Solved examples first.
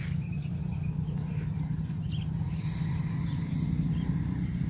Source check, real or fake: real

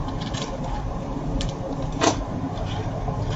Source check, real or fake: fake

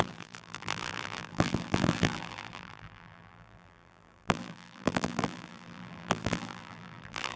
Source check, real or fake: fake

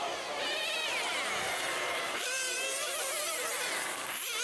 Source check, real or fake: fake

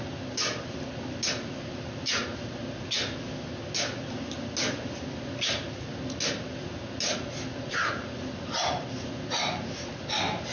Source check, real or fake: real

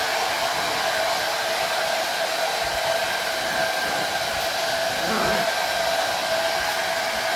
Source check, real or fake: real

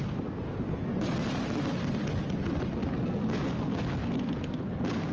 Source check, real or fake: real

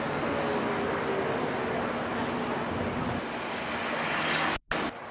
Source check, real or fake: real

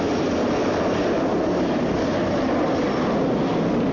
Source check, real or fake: real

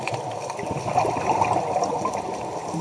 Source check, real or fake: real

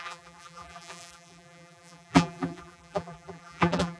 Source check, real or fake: fake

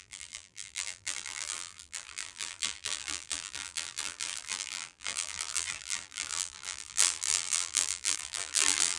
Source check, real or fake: fake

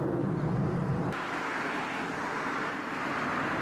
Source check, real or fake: real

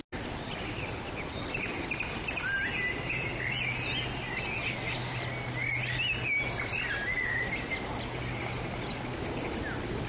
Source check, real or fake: real